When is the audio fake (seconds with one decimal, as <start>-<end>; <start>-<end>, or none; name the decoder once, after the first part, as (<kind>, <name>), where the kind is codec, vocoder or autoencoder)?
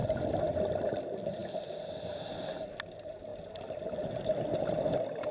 none